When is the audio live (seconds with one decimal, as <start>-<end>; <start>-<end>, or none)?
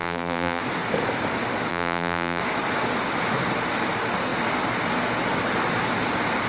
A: 0.6-1.7; 2.4-6.5